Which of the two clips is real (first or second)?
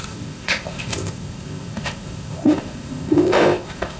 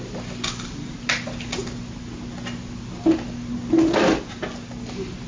second